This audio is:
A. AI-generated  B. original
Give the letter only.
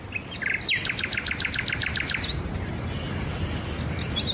B